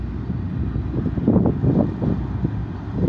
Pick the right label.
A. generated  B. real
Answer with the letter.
B